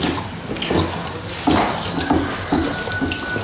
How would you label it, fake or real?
real